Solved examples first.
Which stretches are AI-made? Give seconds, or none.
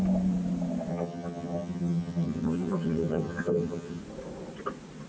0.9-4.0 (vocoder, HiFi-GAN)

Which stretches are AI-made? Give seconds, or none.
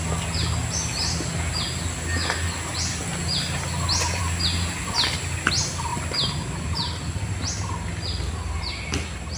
none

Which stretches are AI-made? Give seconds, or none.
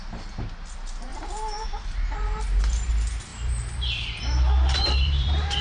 1.1-2.9 (vocoder, BigVGAN v2); 3.3-5.6